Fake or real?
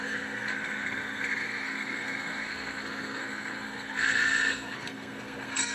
fake